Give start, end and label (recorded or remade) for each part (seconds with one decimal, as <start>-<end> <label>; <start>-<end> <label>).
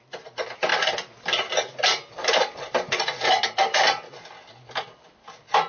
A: 0.0-5.7 recorded